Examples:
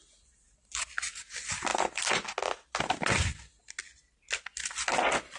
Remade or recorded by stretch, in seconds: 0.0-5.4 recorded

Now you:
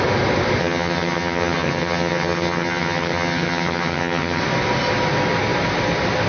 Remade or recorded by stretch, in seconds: 0.0-0.6 recorded; 0.6-4.4 remade; 4.4-6.3 recorded